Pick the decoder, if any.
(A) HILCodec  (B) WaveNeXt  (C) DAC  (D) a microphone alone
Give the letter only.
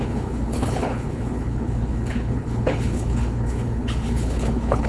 A